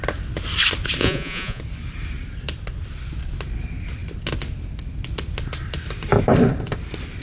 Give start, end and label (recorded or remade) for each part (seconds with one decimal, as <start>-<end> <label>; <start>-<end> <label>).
0.0-1.0 recorded; 1.0-1.6 remade; 1.6-7.2 recorded